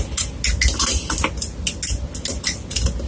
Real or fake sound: real